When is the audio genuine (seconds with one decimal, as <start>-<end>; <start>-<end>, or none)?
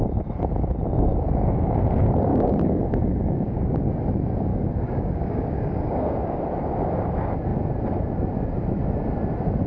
0.0-1.1; 1.8-2.3; 3.9-4.5; 6.4-9.7